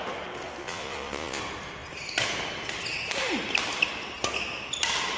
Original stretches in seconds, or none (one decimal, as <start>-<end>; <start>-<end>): 0.0-0.6; 1.4-5.2